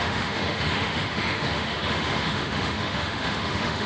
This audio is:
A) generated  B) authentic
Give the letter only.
A